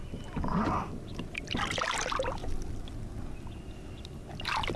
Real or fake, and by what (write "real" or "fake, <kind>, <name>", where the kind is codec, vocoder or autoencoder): real